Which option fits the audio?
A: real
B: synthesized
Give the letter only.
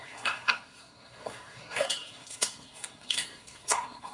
B